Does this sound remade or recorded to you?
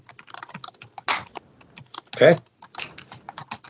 recorded